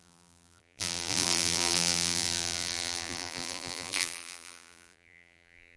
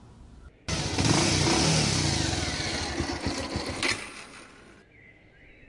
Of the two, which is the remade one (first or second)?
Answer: first